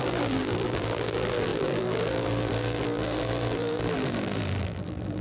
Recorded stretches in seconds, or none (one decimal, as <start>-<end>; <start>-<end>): none

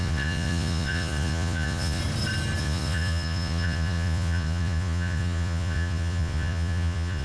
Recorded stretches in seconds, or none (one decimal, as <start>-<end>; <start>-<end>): 2.0-2.6

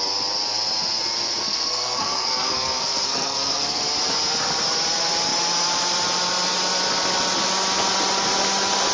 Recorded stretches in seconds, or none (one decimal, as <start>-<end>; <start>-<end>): 0.0-1.4; 3.8-8.9

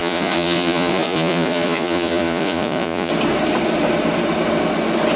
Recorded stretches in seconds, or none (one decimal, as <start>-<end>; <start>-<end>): 3.1-5.2

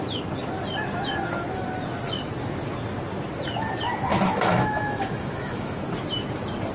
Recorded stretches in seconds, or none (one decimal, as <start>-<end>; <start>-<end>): 0.0-4.1; 5.8-6.7

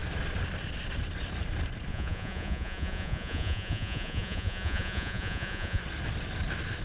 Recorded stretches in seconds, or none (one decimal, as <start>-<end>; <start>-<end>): 0.0-1.9; 5.8-6.8

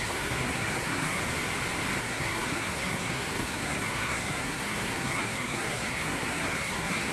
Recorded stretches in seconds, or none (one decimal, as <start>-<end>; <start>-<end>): 1.2-2.0

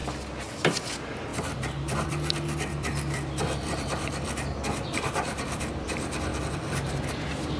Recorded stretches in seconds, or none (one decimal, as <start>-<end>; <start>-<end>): 0.0-0.9